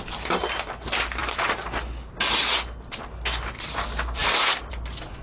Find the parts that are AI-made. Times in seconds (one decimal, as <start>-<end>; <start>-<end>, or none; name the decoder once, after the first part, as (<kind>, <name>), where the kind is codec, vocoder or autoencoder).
none